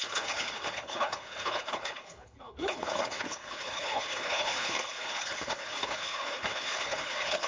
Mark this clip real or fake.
fake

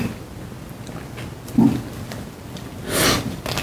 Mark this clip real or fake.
real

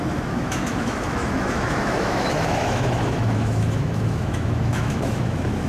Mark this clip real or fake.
fake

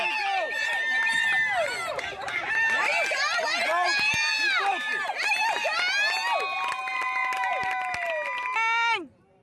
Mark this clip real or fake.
real